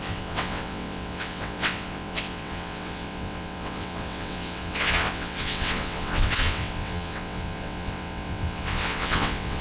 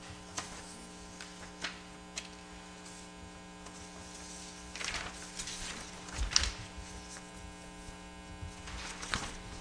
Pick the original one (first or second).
second